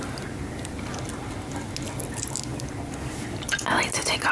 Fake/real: real